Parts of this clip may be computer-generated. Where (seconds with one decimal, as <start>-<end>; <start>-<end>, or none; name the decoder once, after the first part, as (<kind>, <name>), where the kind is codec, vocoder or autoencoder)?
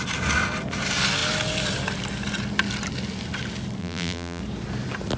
3.8-4.4 (vocoder, BigVGAN v2)